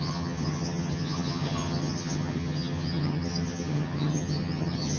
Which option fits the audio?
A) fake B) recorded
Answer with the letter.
A